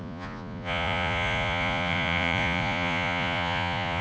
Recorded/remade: remade